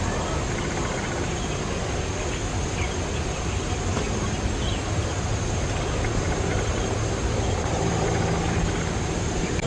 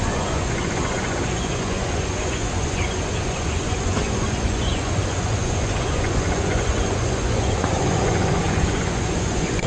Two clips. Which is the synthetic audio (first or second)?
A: second